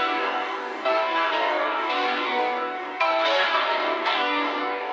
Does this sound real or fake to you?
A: fake